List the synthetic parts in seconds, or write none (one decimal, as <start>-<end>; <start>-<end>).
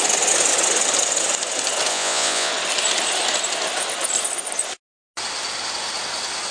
1.9-2.5